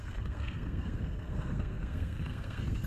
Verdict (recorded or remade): remade